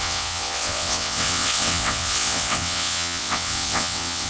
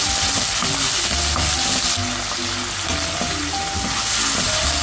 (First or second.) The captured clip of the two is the second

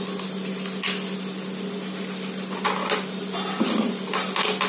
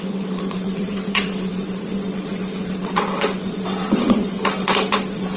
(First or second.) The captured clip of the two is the first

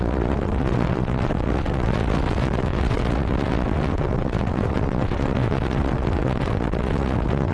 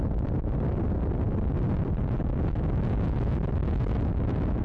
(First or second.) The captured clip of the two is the second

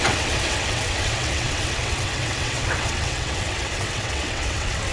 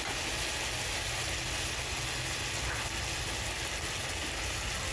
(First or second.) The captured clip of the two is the second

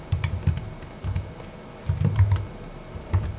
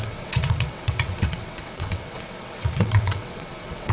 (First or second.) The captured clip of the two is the first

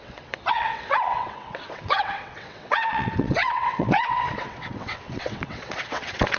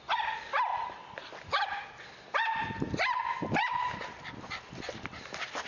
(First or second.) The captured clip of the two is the second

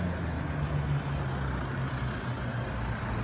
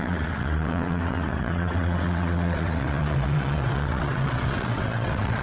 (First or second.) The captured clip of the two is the first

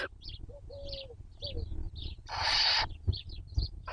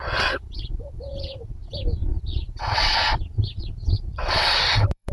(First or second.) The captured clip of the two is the first